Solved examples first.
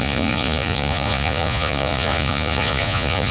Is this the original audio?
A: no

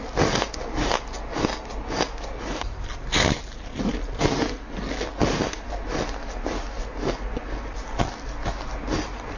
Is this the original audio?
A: yes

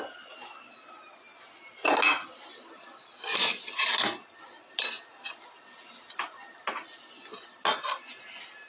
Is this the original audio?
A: yes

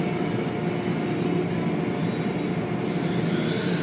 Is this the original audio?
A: yes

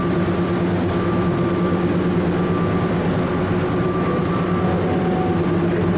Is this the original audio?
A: yes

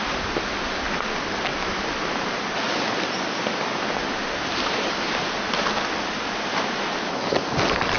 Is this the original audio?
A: yes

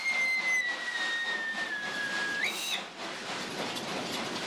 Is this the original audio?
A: yes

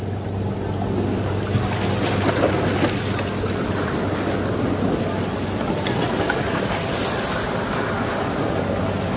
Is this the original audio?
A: yes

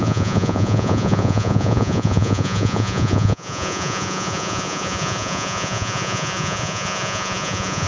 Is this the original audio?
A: no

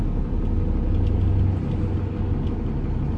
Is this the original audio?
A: yes